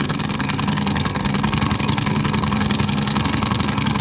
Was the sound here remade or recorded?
remade